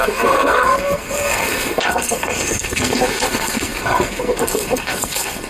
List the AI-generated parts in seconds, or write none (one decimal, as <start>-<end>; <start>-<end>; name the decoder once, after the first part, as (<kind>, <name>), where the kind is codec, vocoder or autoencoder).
0.0-5.5 (codec, SNAC)